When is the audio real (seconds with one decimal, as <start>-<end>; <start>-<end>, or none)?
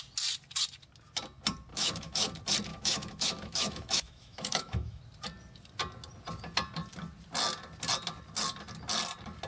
0.0-1.7; 2.3-2.7; 5.0-9.5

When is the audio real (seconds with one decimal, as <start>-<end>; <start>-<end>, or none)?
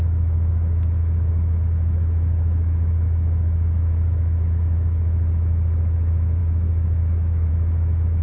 none